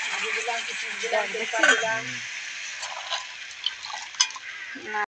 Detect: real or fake real